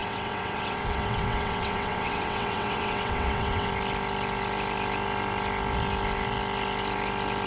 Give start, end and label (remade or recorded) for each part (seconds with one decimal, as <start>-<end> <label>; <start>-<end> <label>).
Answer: 0.0-3.7 remade; 3.7-7.5 recorded